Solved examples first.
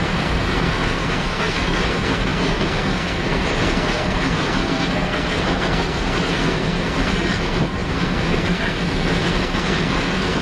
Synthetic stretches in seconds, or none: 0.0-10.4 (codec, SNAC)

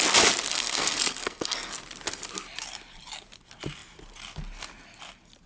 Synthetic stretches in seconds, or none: 0.5-1.7 (codec, SNAC)